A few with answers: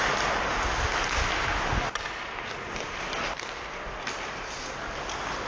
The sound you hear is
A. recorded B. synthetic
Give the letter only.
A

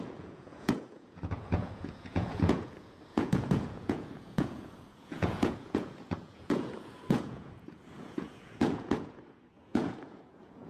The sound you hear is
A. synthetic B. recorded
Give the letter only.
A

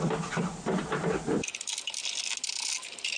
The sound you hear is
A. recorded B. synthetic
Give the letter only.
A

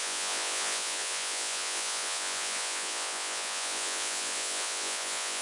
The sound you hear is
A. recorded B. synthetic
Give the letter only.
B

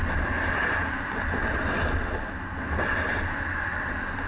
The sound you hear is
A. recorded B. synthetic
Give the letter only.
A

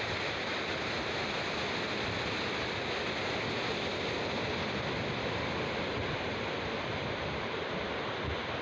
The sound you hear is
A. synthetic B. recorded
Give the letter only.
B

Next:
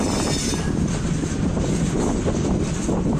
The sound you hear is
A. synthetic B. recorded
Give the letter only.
B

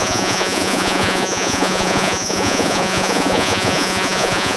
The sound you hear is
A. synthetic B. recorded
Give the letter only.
A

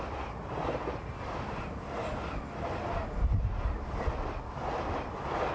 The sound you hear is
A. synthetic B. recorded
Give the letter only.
B